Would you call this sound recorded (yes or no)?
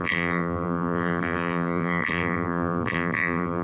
no